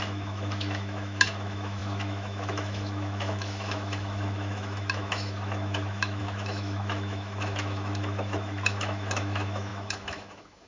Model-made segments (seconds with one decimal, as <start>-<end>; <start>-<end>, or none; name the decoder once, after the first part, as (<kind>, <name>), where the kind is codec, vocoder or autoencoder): 0.0-10.7 (autoencoder, DAC-VAE)